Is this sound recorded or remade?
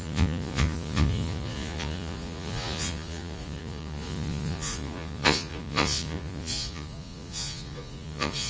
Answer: remade